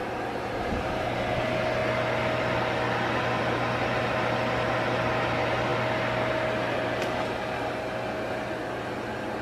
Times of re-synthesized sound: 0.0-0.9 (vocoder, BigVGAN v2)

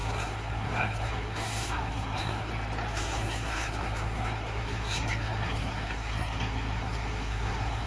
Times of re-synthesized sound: 0.0-2.5 (codec, SNAC); 2.9-7.9

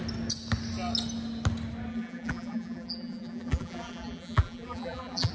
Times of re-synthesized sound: 1.9-5.3 (vocoder, BigVGAN v2)

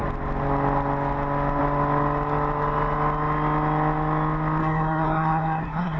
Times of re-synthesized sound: 4.6-6.0 (codec, SNAC)